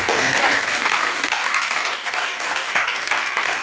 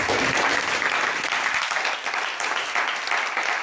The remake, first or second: first